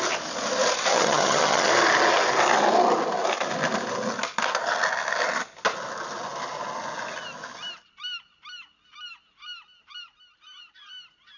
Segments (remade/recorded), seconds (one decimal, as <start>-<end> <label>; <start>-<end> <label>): 0.0-0.9 recorded; 0.9-1.7 remade; 1.7-11.4 recorded